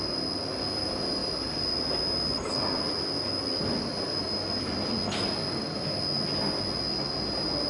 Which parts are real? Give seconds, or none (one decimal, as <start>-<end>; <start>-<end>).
0.0-7.7